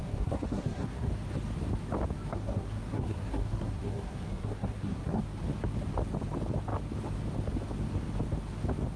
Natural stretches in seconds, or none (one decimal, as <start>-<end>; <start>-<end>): 1.1-2.3; 5.2-9.0